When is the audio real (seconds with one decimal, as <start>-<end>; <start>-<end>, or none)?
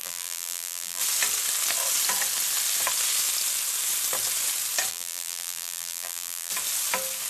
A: 1.0-4.9; 6.5-7.3